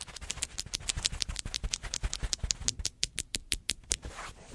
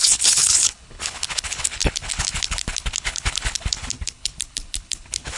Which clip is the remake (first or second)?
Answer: second